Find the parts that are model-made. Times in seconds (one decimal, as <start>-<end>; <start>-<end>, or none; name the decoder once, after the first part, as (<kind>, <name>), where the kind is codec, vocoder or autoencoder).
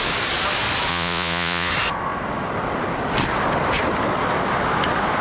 0.9-1.7 (vocoder, Vocos)